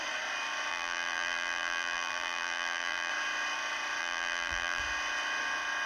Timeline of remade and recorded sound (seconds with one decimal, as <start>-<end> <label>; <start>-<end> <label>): 0.0-0.7 recorded; 0.7-3.1 remade; 3.1-4.0 recorded; 4.0-4.8 remade; 4.8-5.9 recorded